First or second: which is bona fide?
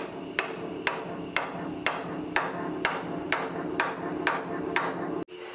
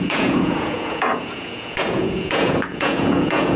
first